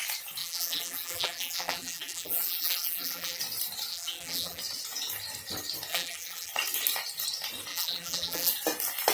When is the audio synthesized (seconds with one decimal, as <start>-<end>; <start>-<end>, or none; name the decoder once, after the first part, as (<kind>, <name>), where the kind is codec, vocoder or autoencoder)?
0.4-3.4 (vocoder, BigVGAN v2); 3.9-4.6; 5.9-6.5; 7.7-8.5